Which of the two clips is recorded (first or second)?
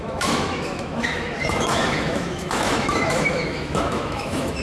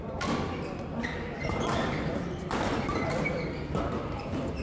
second